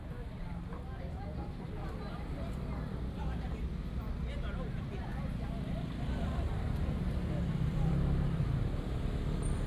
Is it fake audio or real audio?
real